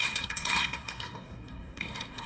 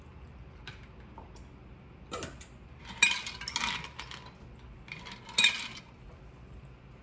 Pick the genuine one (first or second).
second